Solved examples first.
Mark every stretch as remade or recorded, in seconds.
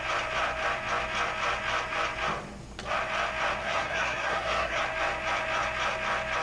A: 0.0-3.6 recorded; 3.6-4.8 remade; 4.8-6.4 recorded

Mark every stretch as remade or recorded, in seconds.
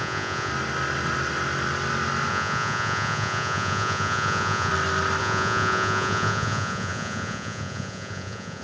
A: 0.0-0.5 remade; 0.5-2.3 recorded; 2.3-4.7 remade; 4.7-5.2 recorded; 5.2-8.6 remade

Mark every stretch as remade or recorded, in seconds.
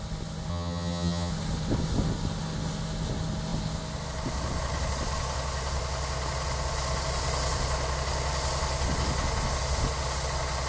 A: 0.0-0.5 recorded; 0.5-1.3 remade; 1.3-10.7 recorded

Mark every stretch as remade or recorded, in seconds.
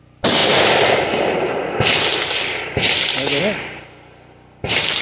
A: 0.0-5.0 recorded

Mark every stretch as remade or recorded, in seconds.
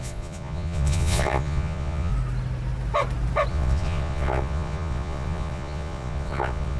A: 0.0-2.1 remade; 2.1-3.5 recorded; 3.5-6.8 remade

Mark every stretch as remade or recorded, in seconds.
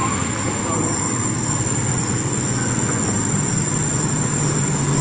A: 0.0-1.9 recorded; 1.9-3.1 remade; 3.1-5.0 recorded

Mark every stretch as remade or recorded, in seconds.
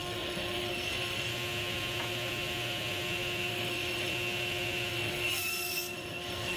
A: 0.0-1.3 remade; 1.3-3.5 recorded; 3.5-4.1 remade; 4.1-4.9 recorded; 4.9-6.6 remade